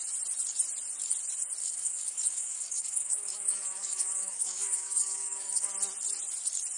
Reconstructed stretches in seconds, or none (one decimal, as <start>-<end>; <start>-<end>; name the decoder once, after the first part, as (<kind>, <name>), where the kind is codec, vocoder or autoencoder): 1.6-5.7 (codec, DAC)